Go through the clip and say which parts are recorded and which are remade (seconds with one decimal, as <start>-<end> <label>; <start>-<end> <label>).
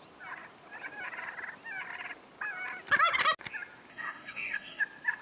0.0-3.9 recorded; 3.9-4.8 remade; 4.8-5.2 recorded